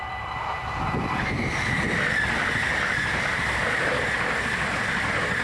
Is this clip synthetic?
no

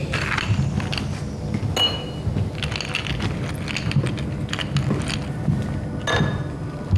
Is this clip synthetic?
no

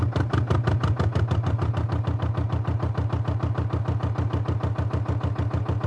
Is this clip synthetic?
no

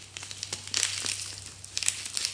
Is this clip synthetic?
no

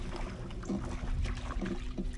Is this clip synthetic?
no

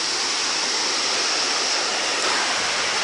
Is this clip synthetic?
no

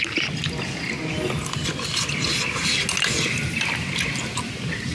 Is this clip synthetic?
no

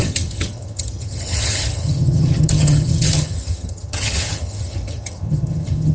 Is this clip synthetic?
yes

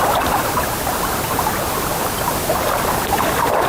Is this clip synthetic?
no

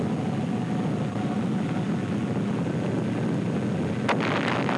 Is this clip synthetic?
no